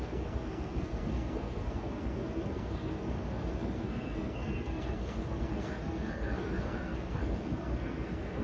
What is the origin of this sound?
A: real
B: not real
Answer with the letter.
B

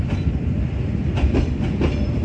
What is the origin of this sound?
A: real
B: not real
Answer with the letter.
A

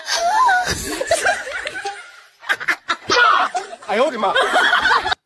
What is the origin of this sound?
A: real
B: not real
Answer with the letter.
A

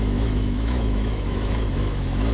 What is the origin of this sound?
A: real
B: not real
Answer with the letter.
B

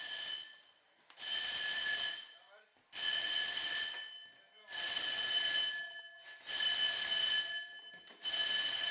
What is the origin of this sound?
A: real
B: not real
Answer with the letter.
A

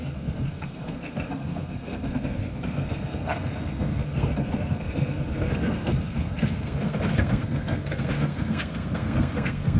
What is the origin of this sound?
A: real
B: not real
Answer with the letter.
B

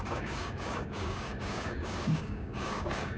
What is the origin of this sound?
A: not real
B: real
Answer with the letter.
A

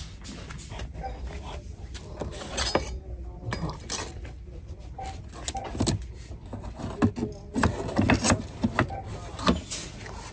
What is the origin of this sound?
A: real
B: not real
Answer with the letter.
A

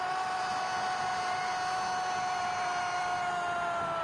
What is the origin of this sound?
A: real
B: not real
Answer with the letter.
A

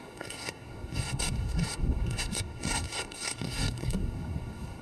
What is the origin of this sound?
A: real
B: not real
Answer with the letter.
B